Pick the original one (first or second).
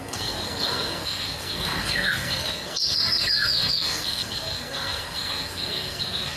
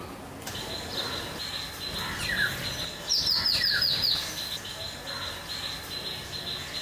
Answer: second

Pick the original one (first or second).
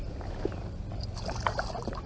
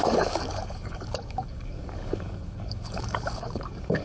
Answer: first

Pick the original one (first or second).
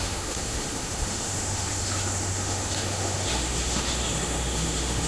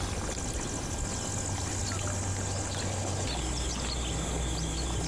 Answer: second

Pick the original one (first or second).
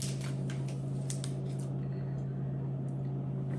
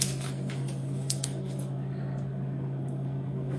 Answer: first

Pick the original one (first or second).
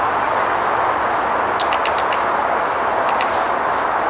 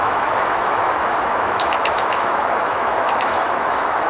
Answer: first